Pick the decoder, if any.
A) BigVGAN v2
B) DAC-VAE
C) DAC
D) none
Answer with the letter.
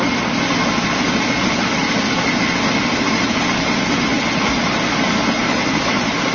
D